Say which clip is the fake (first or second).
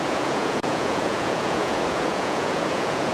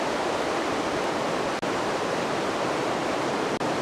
first